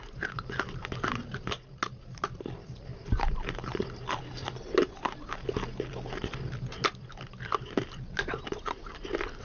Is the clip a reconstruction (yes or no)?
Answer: no